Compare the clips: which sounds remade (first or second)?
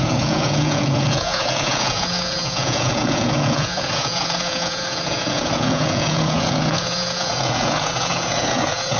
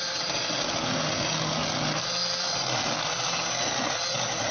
first